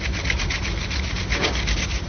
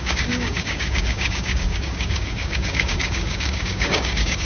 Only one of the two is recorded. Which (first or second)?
first